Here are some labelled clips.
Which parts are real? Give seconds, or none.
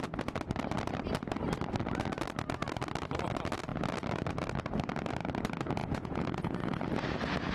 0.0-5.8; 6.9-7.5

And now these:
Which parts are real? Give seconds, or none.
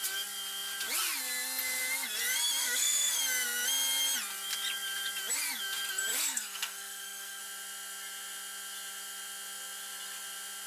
0.0-2.6; 3.2-6.1; 7.4-10.7